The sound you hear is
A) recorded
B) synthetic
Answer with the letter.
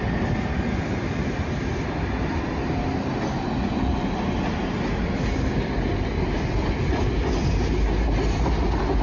A